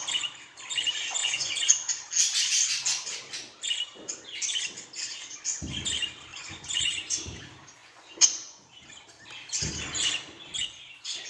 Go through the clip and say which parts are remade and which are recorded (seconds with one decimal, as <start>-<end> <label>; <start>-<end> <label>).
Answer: 0.0-1.2 recorded; 1.2-2.0 remade; 2.0-6.3 recorded; 6.3-7.2 remade; 7.2-7.8 recorded; 7.8-8.6 remade; 8.6-11.3 recorded